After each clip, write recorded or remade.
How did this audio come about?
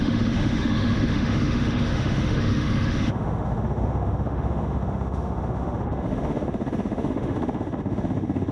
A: remade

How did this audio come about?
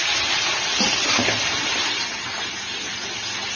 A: recorded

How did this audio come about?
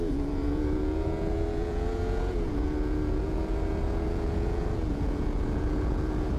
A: remade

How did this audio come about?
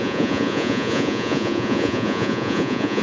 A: remade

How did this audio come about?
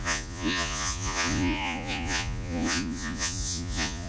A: remade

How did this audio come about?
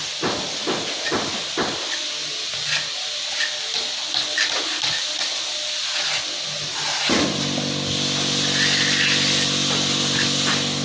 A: recorded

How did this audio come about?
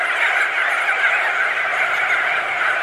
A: recorded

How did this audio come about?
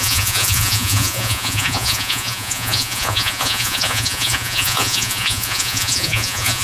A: remade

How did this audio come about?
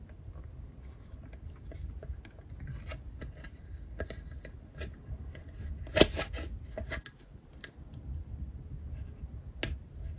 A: recorded